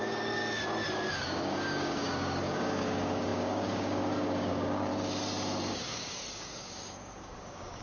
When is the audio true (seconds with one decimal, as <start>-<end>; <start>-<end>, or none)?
0.4-1.1; 4.9-5.7